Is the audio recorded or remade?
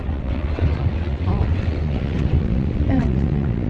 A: remade